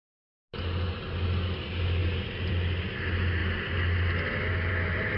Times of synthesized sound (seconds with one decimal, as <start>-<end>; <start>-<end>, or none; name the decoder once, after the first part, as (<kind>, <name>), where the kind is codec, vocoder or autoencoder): 2.0-2.5 (vocoder, BigVGAN v2)